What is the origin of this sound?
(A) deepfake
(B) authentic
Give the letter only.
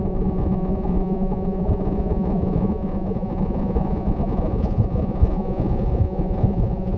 A